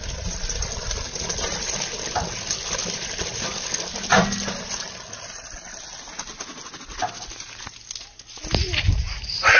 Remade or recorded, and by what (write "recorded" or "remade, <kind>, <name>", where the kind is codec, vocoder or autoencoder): recorded